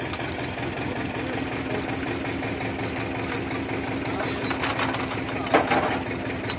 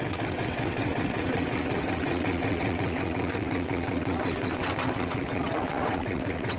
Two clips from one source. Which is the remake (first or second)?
second